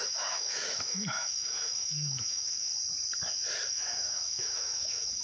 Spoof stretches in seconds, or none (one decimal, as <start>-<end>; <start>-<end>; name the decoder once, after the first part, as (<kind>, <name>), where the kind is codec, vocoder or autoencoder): 0.0-2.7 (autoencoder, DAC-VAE); 3.7-5.2